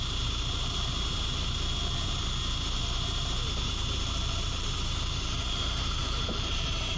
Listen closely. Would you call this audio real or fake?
fake